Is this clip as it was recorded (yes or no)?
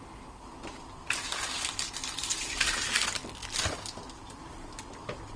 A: yes